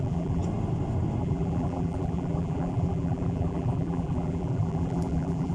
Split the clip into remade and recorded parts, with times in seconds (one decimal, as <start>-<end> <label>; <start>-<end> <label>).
0.0-0.4 remade; 0.4-1.2 recorded; 1.2-5.5 remade